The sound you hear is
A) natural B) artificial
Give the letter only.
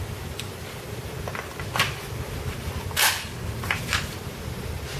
A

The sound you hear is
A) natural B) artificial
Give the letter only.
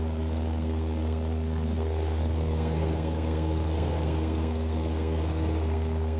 B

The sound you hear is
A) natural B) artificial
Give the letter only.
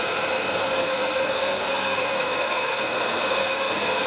B